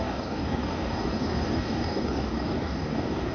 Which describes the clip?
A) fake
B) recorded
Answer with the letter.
A